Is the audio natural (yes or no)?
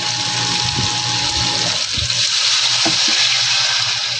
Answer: yes